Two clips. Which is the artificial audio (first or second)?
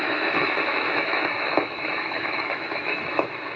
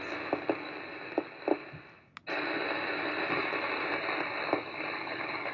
first